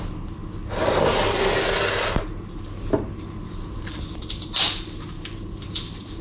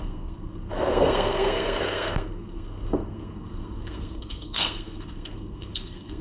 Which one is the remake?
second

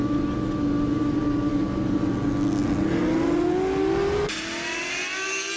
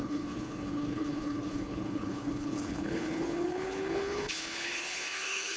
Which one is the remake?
second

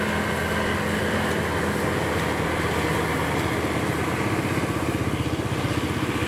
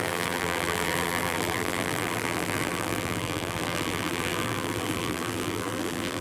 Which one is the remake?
second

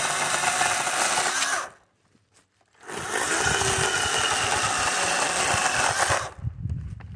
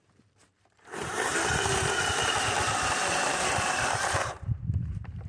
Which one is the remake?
second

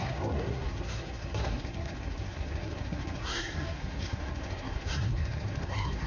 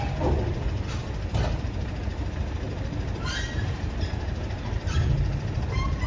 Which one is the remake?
first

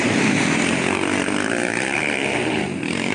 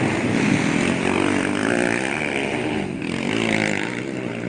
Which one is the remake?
first